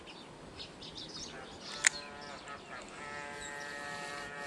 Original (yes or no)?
yes